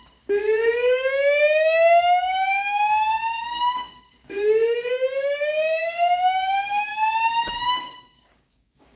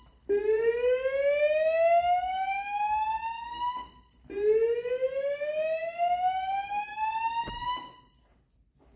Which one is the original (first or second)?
second